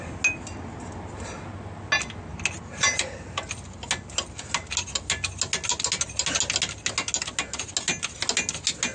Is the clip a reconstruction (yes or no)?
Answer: no